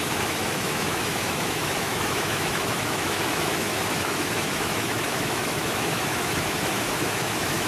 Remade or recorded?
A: remade